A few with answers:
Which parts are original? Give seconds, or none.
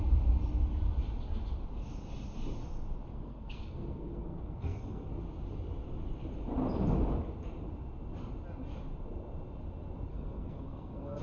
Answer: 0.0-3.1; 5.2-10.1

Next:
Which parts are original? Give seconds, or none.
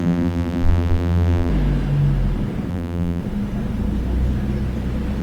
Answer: 1.5-2.7; 3.2-5.2